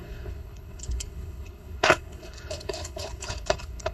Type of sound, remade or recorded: remade